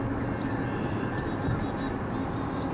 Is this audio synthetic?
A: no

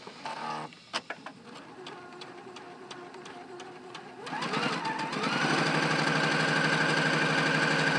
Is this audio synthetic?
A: no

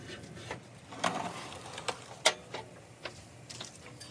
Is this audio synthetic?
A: no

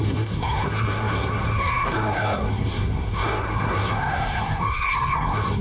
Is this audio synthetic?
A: yes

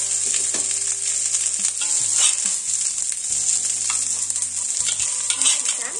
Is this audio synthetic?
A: no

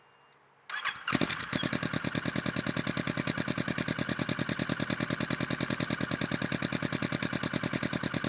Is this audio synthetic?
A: no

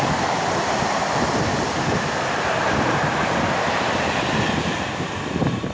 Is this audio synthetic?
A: no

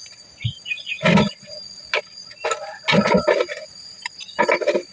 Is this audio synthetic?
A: no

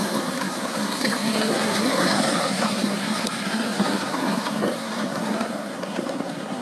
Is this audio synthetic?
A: yes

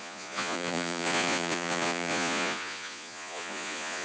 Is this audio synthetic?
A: yes